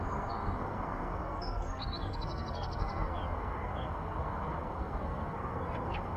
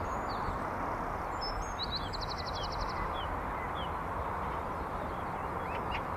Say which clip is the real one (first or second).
second